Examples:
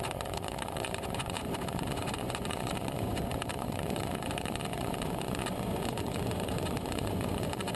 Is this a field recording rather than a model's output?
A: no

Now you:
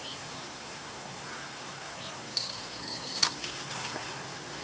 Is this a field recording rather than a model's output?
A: no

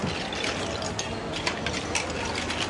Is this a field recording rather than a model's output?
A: yes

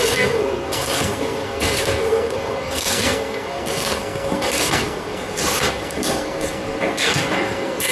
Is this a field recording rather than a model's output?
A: no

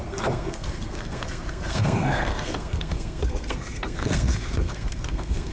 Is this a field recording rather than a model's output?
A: no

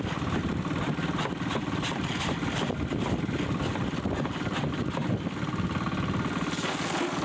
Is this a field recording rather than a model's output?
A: yes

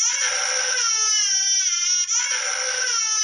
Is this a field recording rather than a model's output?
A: yes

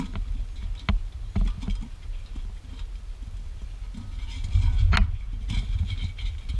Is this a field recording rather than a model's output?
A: yes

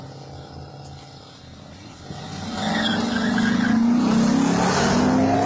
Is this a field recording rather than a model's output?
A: yes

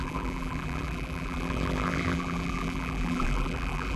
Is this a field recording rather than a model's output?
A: no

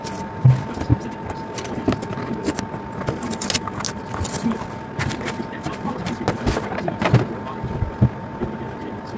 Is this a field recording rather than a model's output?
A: yes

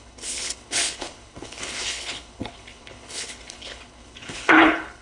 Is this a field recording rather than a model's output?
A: no